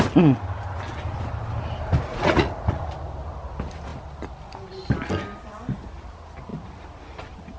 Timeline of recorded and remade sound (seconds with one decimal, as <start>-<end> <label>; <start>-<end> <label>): 0.0-2.1 recorded; 2.1-2.8 remade; 2.8-7.6 recorded